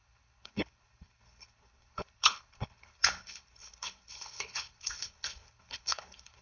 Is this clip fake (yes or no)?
yes